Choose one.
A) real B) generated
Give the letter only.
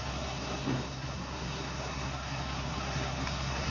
B